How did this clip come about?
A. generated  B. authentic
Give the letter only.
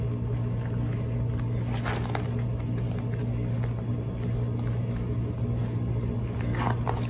B